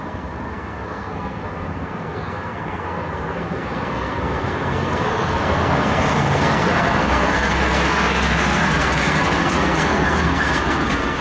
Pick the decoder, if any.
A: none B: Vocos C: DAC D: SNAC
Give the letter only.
D